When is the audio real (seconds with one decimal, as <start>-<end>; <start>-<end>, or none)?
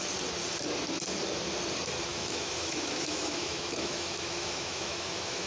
0.0-2.1